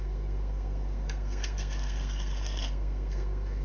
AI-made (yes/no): yes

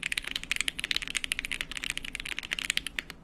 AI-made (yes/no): no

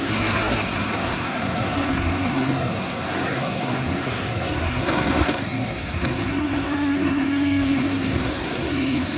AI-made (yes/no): yes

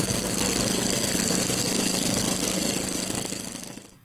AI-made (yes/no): yes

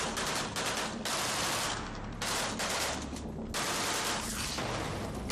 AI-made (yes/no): no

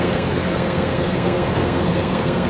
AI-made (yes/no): yes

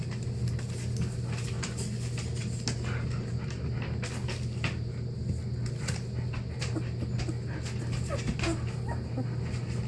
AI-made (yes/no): no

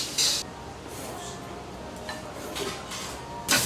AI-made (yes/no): no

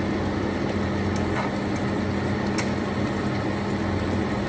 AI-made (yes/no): no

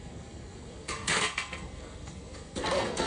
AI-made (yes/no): yes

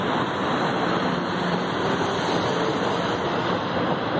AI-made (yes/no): no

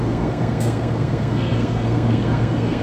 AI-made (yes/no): yes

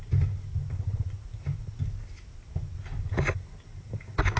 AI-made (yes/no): no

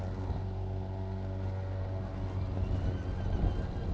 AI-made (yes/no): no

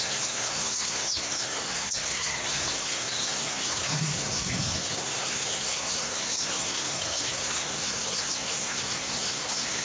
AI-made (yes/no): yes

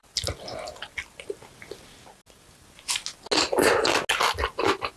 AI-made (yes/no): no